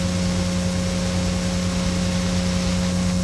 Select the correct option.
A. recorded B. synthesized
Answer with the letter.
A